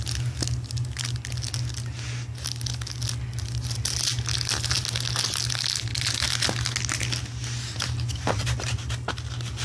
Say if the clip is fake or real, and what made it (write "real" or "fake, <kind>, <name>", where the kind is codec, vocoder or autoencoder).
real